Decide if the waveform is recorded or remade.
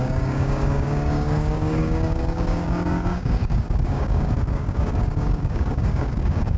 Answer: remade